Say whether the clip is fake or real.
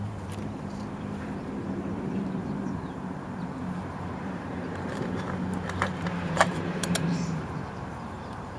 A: fake